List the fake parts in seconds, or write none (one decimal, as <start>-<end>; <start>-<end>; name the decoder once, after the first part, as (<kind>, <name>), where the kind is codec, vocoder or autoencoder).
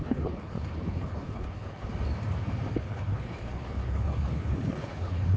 0.0-1.9 (codec, HILCodec); 2.7-5.4